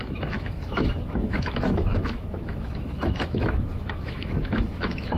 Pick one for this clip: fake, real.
fake